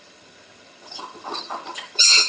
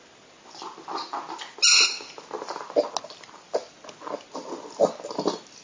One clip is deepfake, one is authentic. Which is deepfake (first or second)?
first